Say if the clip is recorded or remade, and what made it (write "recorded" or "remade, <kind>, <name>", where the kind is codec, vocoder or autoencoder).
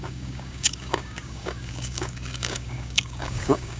remade, codec, DAC